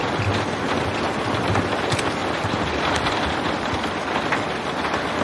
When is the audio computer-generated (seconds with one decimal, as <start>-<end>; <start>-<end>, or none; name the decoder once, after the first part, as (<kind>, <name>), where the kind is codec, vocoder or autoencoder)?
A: 2.2-3.9 (vocoder, BigVGAN v2)

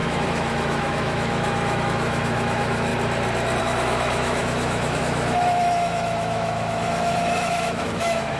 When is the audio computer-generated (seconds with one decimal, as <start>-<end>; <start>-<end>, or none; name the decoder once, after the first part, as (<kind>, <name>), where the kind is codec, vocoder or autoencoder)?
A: 0.0-2.9 (autoencoder, DAC-VAE); 3.6-8.4